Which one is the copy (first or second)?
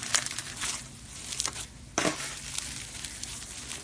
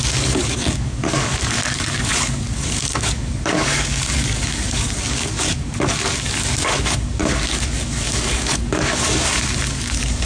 second